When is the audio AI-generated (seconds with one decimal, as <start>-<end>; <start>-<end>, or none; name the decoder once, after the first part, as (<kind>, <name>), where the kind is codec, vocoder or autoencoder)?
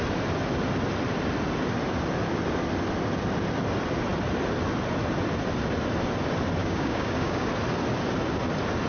6.6-7.5 (codec, DAC)